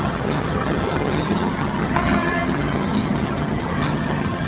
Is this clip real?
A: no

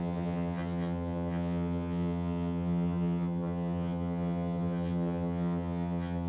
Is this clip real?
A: no